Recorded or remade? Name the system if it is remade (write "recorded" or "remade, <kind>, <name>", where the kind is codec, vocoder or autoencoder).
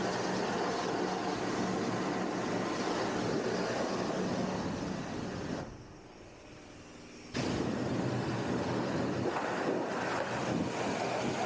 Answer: recorded